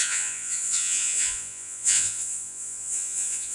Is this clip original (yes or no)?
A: no